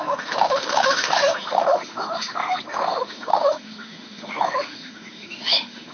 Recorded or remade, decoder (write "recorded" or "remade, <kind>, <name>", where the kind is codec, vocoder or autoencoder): remade, autoencoder, DAC-VAE